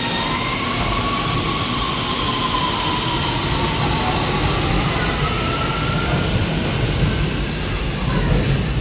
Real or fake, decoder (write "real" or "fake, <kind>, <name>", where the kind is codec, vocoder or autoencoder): real